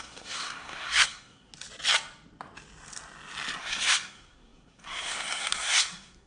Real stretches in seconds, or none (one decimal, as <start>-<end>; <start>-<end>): 1.5-3.6

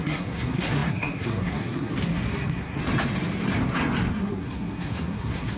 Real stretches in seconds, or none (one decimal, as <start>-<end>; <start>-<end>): 2.8-4.1

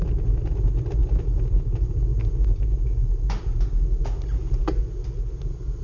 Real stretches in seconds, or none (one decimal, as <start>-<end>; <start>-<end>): 0.0-5.8